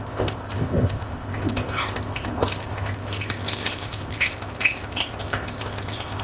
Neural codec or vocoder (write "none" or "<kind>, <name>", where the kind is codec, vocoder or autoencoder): codec, ZipCodec